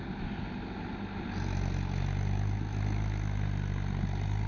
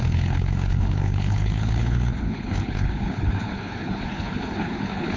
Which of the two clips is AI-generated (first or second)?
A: second